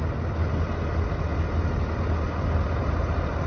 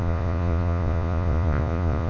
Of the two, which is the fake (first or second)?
second